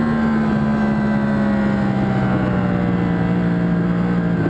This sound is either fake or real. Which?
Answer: real